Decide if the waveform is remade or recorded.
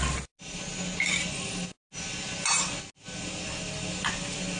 recorded